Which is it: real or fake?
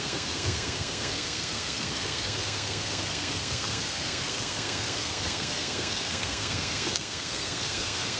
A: fake